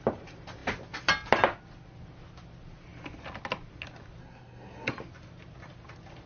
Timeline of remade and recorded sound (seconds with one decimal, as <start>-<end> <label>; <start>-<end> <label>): 0.0-4.2 recorded; 4.2-4.9 remade; 4.9-6.3 recorded